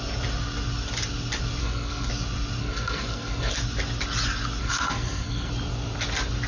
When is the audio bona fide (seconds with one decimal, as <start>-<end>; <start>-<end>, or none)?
0.0-1.6; 2.1-2.6; 3.5-4.6; 5.5-6.5